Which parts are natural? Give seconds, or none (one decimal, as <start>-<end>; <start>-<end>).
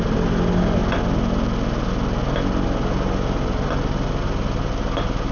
0.0-5.3